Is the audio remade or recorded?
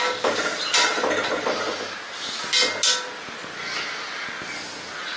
recorded